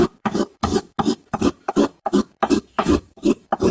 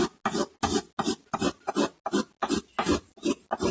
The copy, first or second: first